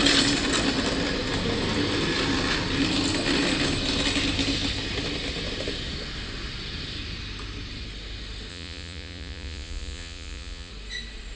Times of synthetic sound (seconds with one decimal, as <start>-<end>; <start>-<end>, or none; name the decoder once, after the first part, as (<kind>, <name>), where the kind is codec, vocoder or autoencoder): 8.5-10.7 (vocoder, Vocos)